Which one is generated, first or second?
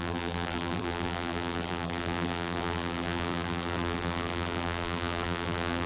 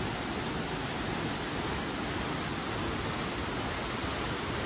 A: first